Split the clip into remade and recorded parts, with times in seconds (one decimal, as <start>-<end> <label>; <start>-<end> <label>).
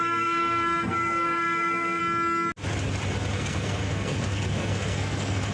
0.0-2.0 remade; 2.0-3.3 recorded; 3.3-5.5 remade